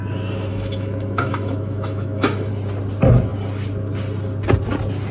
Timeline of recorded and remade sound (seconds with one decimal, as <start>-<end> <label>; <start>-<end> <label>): 0.0-0.5 recorded; 0.5-2.5 remade; 2.5-5.1 recorded